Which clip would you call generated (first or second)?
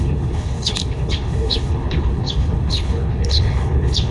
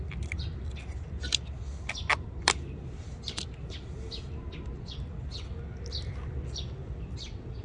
first